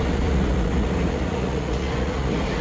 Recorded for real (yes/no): no